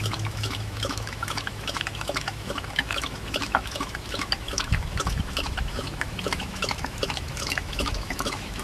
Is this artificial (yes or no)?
yes